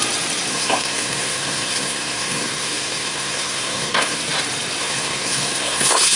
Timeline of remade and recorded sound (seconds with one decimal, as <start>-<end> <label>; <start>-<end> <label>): 0.0-0.5 recorded; 0.5-4.2 remade; 4.2-4.8 recorded; 4.8-6.2 remade